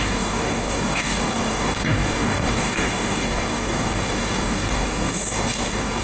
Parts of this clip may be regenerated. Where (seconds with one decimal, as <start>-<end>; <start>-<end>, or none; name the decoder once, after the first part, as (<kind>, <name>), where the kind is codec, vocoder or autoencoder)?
0.0-6.0 (codec, DAC)